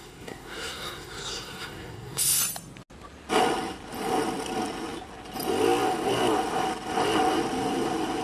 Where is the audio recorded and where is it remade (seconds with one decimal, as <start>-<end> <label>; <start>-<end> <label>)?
0.0-2.4 remade; 2.4-8.2 recorded